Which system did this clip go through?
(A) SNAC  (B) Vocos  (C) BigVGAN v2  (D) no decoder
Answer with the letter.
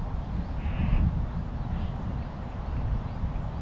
D